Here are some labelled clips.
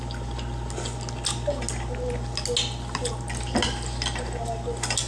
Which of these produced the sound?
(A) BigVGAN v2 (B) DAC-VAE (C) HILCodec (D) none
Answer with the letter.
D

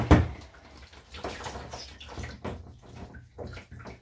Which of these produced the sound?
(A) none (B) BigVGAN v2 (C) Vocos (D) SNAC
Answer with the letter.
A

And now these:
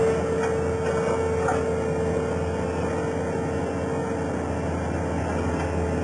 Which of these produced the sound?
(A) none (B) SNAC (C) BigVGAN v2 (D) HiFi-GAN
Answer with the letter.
A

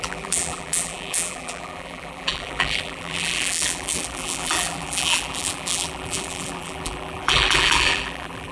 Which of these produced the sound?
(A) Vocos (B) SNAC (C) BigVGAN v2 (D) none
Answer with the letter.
C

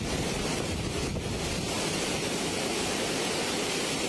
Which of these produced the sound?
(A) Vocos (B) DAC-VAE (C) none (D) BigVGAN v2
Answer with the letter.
D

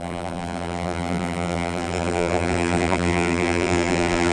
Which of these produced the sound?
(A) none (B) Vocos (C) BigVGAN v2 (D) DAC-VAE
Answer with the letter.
C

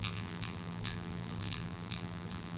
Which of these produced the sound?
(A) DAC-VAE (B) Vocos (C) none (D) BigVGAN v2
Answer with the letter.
D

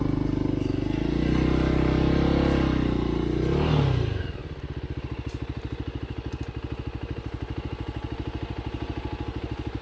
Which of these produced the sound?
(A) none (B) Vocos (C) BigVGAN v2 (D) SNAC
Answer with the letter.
A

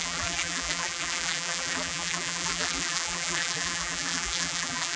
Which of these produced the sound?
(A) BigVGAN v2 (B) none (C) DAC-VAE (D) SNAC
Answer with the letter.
A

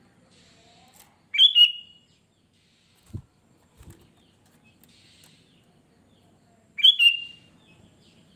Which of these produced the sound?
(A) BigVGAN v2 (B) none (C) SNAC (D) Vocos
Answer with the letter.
B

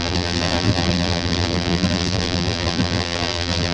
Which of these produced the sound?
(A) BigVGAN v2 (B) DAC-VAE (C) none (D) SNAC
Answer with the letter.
A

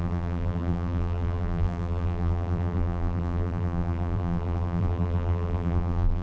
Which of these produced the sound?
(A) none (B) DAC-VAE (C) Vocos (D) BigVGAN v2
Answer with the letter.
D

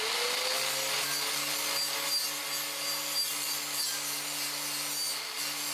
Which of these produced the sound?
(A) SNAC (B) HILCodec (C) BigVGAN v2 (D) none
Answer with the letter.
D